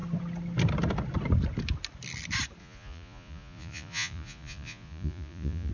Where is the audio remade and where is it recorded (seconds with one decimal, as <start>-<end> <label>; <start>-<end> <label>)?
0.0-2.6 recorded; 2.6-5.7 remade